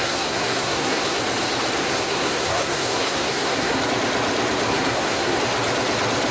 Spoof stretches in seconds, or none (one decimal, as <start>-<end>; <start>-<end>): 0.0-1.2; 1.8-3.8; 4.7-5.4